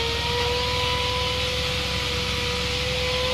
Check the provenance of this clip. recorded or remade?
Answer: recorded